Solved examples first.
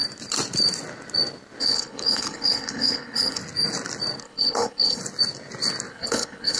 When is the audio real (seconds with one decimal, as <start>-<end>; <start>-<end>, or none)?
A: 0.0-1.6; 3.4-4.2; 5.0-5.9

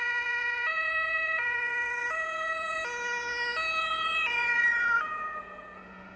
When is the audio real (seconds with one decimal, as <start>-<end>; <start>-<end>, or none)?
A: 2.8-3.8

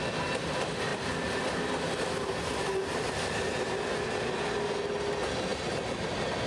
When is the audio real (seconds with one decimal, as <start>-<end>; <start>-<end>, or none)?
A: 0.0-6.5

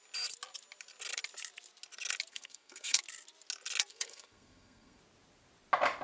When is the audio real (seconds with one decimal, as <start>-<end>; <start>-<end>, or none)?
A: 0.0-2.3; 3.0-3.9; 5.0-6.0